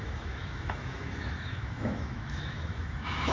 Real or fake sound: fake